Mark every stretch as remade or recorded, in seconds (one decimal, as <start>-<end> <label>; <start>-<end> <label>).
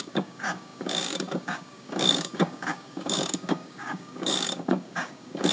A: 0.0-5.5 remade